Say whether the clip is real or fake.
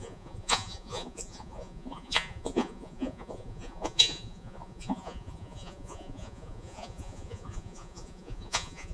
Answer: fake